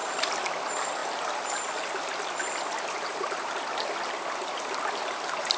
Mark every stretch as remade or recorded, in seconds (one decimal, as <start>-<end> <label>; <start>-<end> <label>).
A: 0.0-5.6 recorded